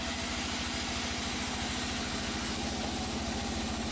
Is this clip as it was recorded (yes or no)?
yes